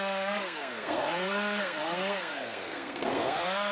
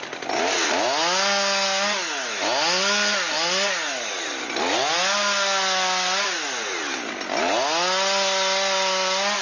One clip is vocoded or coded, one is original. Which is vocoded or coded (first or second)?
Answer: first